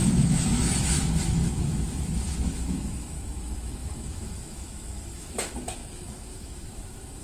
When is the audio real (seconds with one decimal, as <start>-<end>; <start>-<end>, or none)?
none